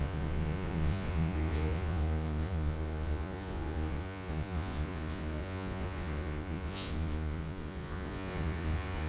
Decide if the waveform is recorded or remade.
remade